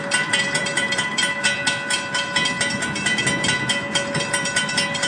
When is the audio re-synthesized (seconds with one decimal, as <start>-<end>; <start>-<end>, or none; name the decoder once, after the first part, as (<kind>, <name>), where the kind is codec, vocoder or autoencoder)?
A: 0.0-1.2 (vocoder, BigVGAN v2); 4.3-5.1

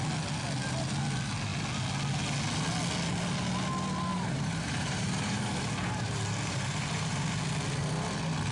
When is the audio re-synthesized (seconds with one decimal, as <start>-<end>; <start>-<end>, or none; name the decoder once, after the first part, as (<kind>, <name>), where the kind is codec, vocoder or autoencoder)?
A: 4.1-7.3 (vocoder, BigVGAN v2)

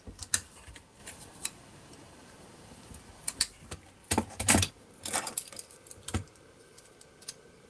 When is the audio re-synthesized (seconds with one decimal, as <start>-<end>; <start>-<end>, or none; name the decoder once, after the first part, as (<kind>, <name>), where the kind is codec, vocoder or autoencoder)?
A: 1.0-3.4 (vocoder, BigVGAN v2); 4.0-4.7

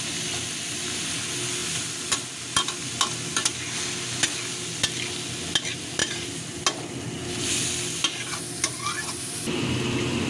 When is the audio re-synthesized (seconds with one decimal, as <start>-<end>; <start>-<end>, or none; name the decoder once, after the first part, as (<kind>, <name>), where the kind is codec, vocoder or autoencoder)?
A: 6.0-6.6 (vocoder, BigVGAN v2)

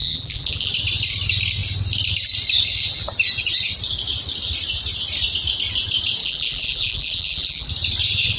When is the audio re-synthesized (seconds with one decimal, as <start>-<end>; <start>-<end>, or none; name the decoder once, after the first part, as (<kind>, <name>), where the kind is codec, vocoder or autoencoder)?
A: 0.0-0.7 (vocoder, BigVGAN v2); 6.2-7.7